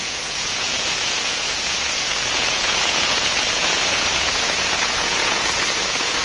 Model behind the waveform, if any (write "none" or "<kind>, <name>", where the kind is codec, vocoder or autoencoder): vocoder, Vocos